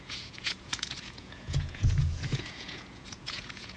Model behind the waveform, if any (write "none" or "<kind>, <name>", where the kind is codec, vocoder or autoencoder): vocoder, Vocos